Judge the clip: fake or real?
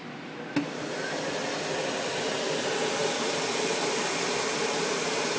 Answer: real